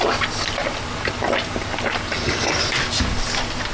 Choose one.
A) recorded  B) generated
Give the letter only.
A